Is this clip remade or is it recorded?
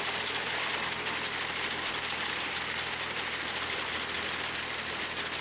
recorded